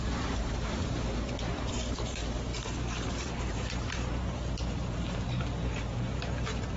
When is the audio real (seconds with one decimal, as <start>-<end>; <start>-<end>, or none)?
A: none